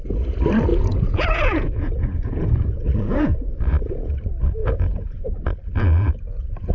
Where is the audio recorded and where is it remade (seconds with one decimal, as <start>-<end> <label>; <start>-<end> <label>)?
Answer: 0.0-0.7 recorded; 0.7-4.1 remade; 4.1-4.6 recorded; 4.6-5.2 remade; 5.2-6.7 recorded